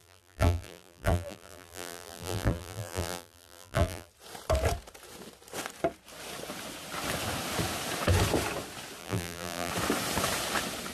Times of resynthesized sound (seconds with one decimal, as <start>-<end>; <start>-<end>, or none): 0.0-4.1; 9.0-9.7